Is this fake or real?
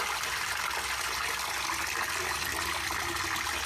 real